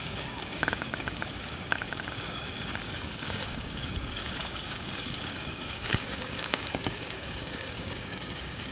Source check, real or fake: fake